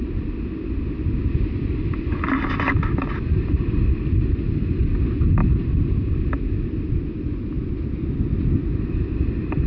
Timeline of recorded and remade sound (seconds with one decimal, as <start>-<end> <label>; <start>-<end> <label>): 0.0-9.7 recorded